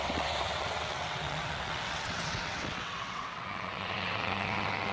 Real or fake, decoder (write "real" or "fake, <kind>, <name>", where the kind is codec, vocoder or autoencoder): fake, vocoder, WaveNeXt